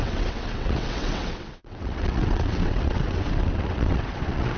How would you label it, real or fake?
fake